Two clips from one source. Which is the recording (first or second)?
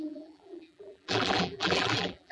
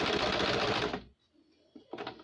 second